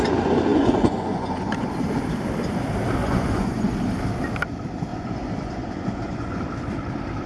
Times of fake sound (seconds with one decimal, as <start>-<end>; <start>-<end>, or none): 0.5-1.7; 3.0-3.7; 4.9-6.4